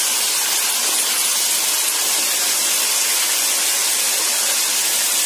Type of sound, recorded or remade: recorded